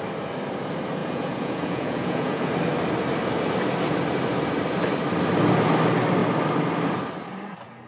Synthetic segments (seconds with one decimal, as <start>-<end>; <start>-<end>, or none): 1.0-2.5